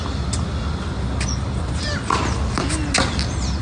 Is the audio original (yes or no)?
yes